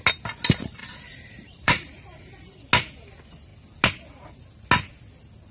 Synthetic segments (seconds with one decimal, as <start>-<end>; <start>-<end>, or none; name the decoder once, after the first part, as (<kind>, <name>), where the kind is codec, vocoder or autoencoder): 0.8-2.6 (vocoder, BigVGAN v2)

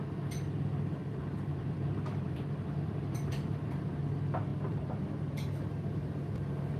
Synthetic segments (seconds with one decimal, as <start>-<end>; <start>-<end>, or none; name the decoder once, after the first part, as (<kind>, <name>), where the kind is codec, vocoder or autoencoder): 1.0-4.0 (vocoder, BigVGAN v2); 4.5-5.0